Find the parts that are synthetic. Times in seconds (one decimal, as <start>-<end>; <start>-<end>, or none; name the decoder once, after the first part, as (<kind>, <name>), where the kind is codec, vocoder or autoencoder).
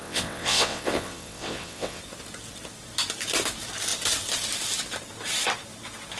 0.0-2.0 (vocoder, WaveNeXt)